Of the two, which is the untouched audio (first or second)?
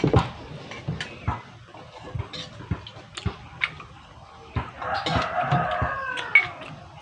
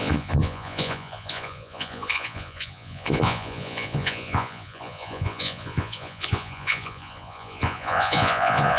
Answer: first